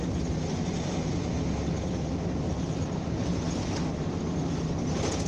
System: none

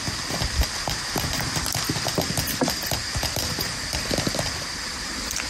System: none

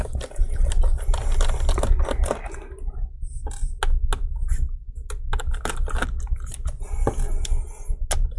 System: none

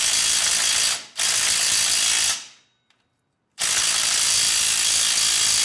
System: vocoder, BigVGAN v2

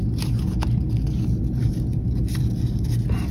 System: none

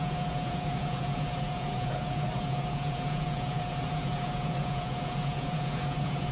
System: vocoder, Vocos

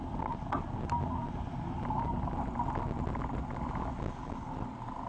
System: none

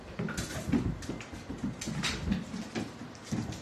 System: none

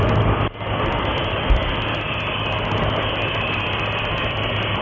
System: none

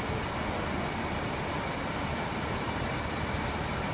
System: none